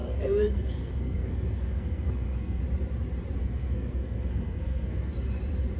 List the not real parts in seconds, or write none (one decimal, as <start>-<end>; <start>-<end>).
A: 0.0-2.6; 3.4-5.1